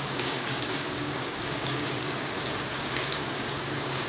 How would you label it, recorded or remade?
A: remade